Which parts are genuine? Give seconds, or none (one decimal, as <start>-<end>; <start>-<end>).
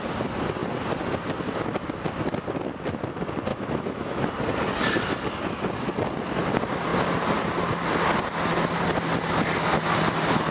0.0-3.5; 4.2-10.5